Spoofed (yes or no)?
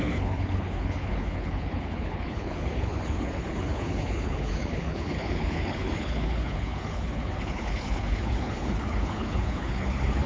yes